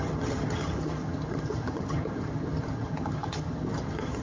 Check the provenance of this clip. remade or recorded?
remade